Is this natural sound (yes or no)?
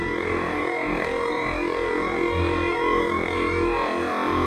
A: no